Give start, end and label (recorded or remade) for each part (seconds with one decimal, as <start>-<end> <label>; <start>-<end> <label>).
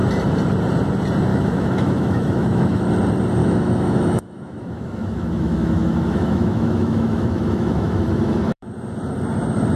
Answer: 0.0-1.3 recorded; 1.3-2.9 remade; 2.9-3.4 recorded; 3.4-8.7 remade; 8.7-9.8 recorded